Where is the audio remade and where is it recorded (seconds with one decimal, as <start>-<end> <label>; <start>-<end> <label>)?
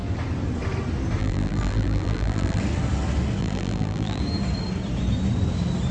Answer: 0.0-1.2 recorded; 1.2-2.6 remade; 2.6-3.4 recorded; 3.4-4.2 remade; 4.2-5.9 recorded